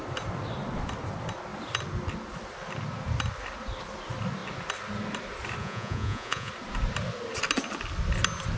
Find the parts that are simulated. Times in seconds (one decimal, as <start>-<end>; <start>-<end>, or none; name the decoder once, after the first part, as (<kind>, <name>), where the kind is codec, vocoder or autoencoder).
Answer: 5.6-6.5 (vocoder, Vocos)

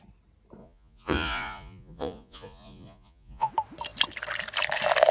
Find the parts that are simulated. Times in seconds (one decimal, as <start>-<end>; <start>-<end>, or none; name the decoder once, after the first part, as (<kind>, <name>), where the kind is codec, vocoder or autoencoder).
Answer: 0.6-3.5 (vocoder, Vocos)

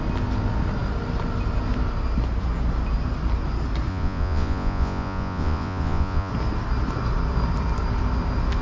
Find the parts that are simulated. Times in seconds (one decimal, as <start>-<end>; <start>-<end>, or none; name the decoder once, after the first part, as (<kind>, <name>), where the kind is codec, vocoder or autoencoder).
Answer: 3.9-6.3 (vocoder, Vocos)

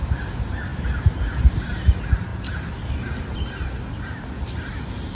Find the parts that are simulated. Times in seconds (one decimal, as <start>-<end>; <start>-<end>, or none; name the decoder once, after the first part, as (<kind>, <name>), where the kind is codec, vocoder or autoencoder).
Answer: none

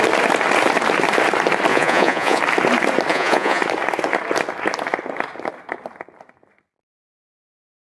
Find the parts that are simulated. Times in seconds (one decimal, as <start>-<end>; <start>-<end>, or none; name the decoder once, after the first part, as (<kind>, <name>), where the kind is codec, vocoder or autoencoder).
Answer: 1.7-2.4 (vocoder, Vocos); 3.1-3.6

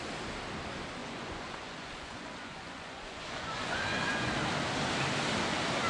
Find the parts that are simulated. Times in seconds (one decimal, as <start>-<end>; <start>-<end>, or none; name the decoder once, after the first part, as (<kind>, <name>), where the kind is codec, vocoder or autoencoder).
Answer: 1.0-4.3 (vocoder, Vocos)